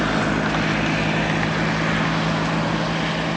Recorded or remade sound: recorded